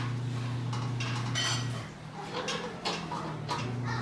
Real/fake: real